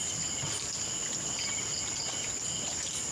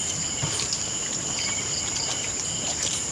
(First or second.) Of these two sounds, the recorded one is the first